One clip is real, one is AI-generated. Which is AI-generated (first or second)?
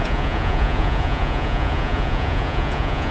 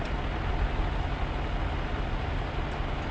first